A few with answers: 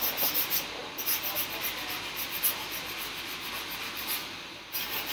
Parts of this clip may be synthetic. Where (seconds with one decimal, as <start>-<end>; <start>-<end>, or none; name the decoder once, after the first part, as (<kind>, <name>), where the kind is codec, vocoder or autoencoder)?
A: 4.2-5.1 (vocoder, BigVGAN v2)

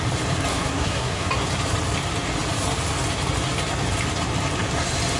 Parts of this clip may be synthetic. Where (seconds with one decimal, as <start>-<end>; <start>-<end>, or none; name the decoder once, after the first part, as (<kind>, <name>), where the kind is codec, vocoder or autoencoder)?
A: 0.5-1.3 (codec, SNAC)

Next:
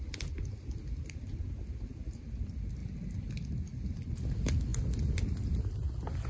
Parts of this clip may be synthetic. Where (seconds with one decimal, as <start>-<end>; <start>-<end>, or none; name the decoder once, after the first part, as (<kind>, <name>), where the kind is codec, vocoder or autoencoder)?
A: none

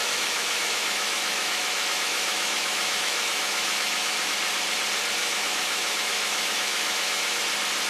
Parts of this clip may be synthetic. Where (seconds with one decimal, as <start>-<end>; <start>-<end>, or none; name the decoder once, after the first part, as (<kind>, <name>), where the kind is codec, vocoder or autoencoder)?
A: 0.0-4.3 (autoencoder, DAC-VAE); 5.2-7.4

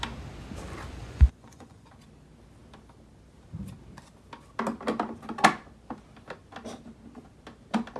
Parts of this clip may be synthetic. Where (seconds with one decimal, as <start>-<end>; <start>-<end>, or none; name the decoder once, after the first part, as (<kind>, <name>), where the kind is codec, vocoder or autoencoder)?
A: 1.0-1.9 (vocoder, Vocos)